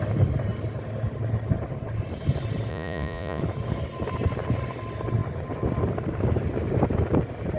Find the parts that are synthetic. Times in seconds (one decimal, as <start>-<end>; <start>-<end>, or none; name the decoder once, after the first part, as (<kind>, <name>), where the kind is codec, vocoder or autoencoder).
2.7-3.4 (vocoder, Vocos)